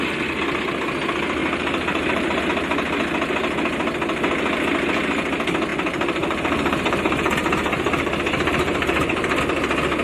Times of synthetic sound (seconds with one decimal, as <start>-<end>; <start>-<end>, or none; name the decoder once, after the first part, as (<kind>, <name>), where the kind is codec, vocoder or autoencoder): 1.4-2.4 (vocoder, BigVGAN v2); 5.7-9.4